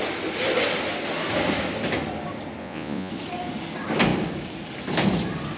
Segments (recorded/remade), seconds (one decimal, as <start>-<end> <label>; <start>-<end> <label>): 0.0-2.6 recorded; 2.6-3.1 remade; 3.1-5.6 recorded